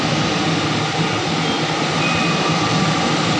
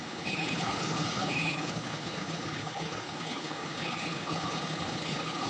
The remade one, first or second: second